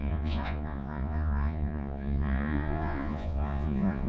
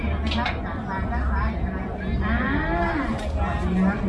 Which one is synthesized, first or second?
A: first